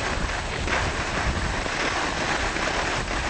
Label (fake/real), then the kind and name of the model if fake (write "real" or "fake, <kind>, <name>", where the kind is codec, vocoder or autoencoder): real